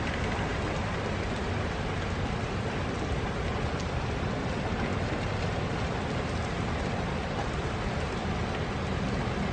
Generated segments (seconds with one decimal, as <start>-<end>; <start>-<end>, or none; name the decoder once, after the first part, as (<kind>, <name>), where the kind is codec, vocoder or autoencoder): none